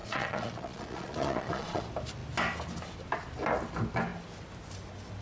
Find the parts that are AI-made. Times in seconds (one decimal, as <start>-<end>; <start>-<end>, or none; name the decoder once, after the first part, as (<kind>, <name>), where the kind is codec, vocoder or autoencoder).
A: 0.0-1.8 (vocoder, Vocos)